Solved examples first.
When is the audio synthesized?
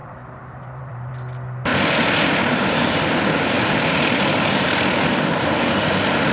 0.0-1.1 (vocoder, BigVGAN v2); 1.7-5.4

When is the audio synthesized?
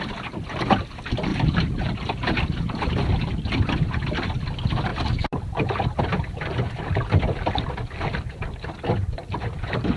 1.3-3.1 (vocoder, BigVGAN v2); 4.9-6.0; 9.2-10.0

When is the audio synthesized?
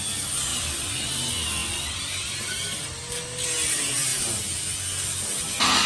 0.5-1.2 (vocoder, BigVGAN v2); 1.6-2.5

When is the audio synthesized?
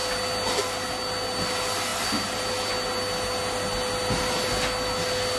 none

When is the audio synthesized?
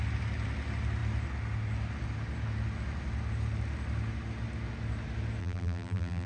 5.4-6.3 (vocoder, BigVGAN v2)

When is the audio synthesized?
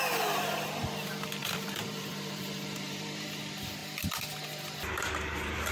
1.4-3.4 (vocoder, BigVGAN v2)